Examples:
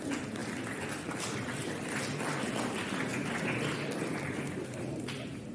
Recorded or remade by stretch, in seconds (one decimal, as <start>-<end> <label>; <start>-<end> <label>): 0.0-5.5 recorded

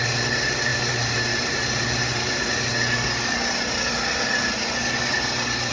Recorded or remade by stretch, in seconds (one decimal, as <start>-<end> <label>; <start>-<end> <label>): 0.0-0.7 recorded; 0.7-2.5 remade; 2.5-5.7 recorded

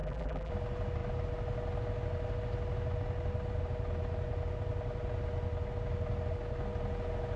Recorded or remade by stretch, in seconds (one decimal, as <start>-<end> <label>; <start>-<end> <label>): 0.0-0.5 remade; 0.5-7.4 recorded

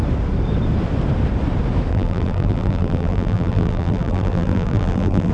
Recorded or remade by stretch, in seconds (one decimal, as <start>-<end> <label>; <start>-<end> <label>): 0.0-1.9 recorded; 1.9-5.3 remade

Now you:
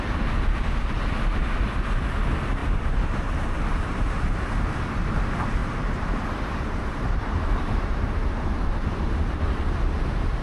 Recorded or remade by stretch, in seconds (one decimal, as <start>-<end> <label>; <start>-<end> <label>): 0.0-2.6 recorded; 2.6-4.5 remade; 4.5-5.6 recorded; 5.6-9.4 remade; 9.4-10.4 recorded

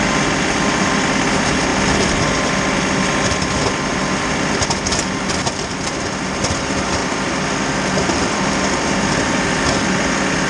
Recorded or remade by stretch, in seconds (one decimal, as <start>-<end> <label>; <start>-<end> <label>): 0.0-1.7 remade; 1.7-5.3 recorded; 5.3-10.5 remade

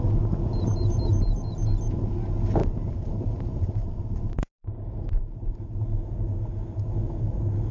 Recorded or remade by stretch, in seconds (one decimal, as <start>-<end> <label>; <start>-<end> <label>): 0.0-0.5 recorded; 0.5-1.4 remade; 1.4-2.6 recorded; 2.6-5.8 remade; 5.8-7.7 recorded